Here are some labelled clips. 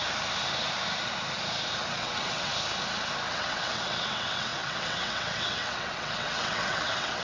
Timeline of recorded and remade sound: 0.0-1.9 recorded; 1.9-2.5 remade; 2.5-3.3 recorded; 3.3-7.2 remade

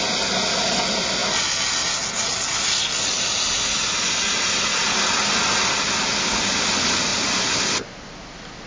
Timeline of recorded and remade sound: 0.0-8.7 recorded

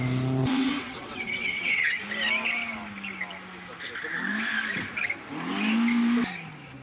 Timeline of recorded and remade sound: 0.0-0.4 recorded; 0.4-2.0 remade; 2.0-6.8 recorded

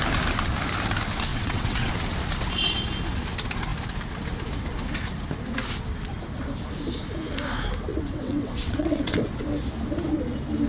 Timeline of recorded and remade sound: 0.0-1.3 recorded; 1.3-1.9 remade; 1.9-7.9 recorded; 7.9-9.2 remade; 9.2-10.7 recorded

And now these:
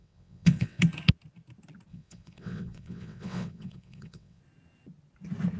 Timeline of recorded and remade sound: 0.0-0.8 remade; 0.8-1.9 recorded; 1.9-4.4 remade; 4.4-5.6 recorded

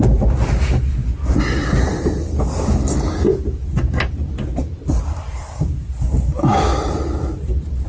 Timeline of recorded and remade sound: 0.0-7.9 recorded

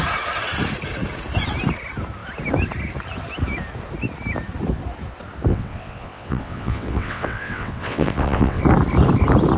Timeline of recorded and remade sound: 0.0-5.5 recorded; 5.5-8.6 remade; 8.6-9.6 recorded

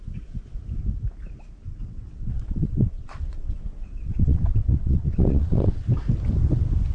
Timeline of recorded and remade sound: 0.0-1.7 recorded; 1.7-5.8 remade; 5.8-6.9 recorded